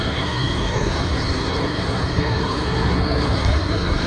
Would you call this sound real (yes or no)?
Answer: no